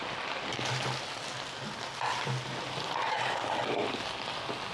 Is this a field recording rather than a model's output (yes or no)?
yes